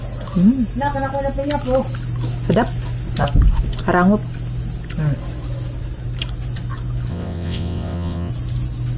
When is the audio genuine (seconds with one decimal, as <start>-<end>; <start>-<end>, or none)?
0.0-7.1; 8.3-9.0